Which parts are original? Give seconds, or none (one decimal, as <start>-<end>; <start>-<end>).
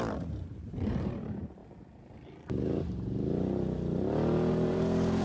1.6-4.5